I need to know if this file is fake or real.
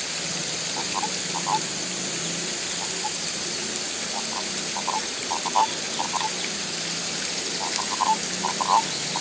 real